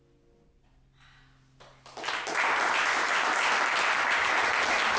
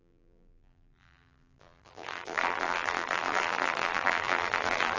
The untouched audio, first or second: first